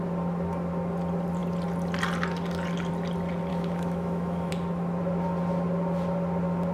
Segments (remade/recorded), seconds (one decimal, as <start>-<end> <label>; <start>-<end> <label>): 0.0-3.5 recorded; 3.5-4.5 remade; 4.5-6.7 recorded

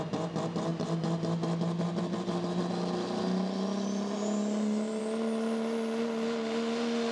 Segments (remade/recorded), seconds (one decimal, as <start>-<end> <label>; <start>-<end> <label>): 0.0-7.1 recorded

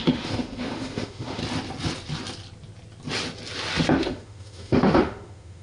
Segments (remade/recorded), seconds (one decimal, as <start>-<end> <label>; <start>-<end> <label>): 0.0-1.4 remade; 1.4-4.0 recorded; 4.0-5.6 remade

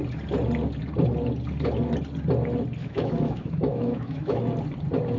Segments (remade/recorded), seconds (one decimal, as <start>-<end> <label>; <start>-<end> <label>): 0.0-2.8 recorded; 2.8-4.4 remade; 4.4-5.2 recorded